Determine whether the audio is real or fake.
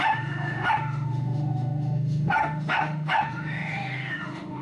fake